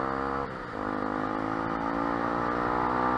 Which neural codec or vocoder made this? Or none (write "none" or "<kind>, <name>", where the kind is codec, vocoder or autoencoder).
none